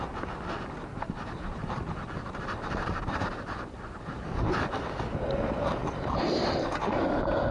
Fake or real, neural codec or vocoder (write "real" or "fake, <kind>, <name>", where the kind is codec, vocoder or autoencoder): real